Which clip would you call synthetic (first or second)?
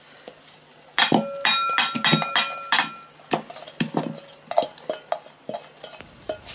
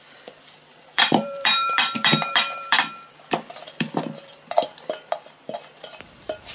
second